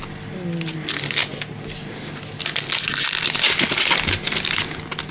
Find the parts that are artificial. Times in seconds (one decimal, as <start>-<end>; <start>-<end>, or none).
none